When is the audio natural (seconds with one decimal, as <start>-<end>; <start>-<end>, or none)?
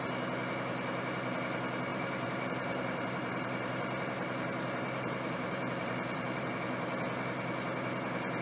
0.0-1.9; 6.5-8.4